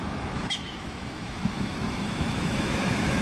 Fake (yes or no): yes